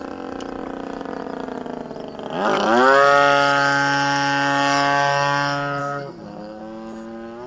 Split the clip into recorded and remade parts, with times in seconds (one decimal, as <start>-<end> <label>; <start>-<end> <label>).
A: 0.0-5.8 recorded; 5.8-6.6 remade; 6.6-7.5 recorded